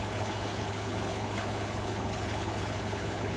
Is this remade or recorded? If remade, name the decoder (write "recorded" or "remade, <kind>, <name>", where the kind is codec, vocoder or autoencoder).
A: remade, codec, HILCodec